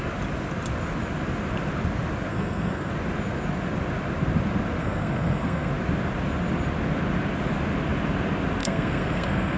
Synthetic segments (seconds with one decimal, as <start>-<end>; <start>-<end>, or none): 2.3-2.9; 4.8-5.7; 8.6-9.6